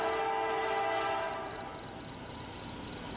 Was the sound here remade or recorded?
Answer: recorded